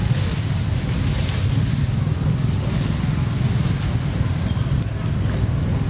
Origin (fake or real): real